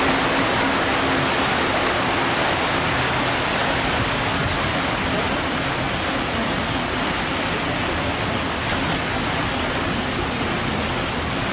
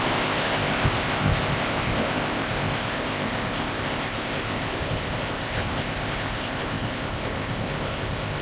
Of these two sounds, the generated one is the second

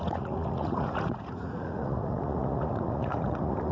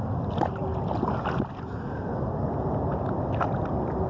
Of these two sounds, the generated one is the first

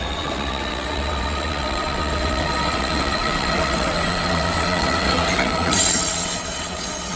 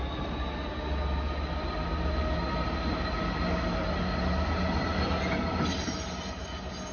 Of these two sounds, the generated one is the first